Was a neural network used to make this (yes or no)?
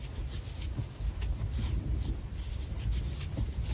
no